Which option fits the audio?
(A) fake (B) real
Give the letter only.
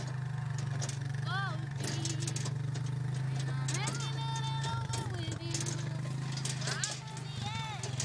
B